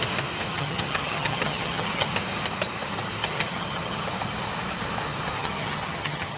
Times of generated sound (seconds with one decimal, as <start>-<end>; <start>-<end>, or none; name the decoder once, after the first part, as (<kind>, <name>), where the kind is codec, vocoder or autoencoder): 0.5-2.1 (vocoder, HiFi-GAN); 3.2-4.1; 5.4-6.4